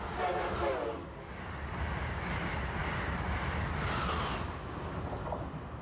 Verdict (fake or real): real